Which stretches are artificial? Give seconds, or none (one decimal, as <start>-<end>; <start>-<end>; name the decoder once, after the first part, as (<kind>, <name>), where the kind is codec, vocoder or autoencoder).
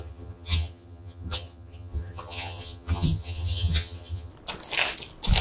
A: 0.0-4.3 (vocoder, HiFi-GAN)